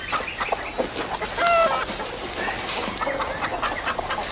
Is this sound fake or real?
real